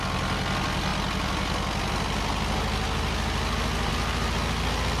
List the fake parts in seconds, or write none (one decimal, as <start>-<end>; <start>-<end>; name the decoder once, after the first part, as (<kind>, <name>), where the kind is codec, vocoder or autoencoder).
none